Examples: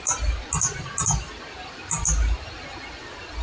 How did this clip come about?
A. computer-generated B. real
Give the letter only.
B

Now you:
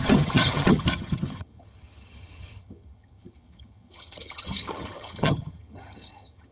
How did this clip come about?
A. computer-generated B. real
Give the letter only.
A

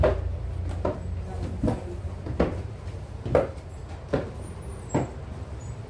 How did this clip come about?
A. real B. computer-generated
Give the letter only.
A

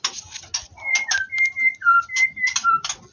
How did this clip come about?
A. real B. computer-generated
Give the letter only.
A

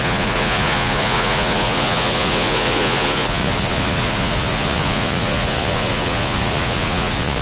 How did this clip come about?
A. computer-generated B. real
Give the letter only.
A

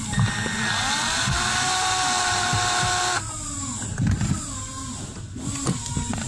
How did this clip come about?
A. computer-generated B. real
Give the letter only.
B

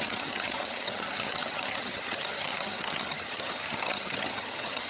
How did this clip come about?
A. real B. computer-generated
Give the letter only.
B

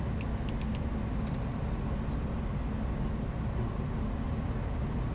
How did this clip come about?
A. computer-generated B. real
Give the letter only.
B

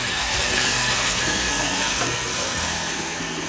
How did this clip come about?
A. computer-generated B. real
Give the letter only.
A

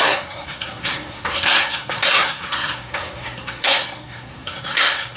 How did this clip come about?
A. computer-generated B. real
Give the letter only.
A